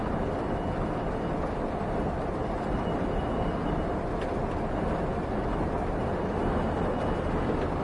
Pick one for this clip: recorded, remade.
recorded